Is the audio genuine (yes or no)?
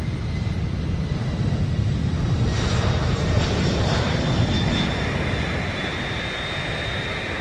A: yes